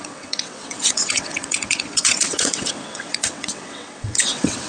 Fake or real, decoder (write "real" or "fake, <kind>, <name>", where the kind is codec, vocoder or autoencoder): fake, vocoder, WaveNeXt